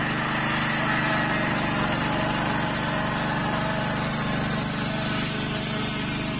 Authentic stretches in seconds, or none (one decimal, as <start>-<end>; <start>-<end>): 0.0-6.4